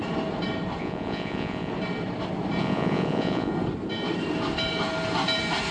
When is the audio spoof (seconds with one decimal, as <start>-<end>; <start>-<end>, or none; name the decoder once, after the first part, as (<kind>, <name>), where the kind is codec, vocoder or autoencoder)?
0.8-1.7 (vocoder, Vocos); 2.6-3.5